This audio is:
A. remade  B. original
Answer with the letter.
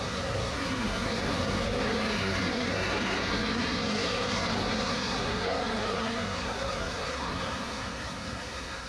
A